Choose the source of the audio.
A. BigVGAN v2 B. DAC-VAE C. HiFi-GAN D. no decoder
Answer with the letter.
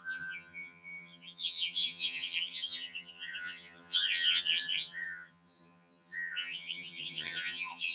C